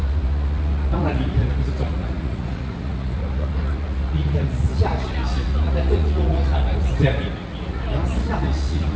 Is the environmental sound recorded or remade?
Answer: remade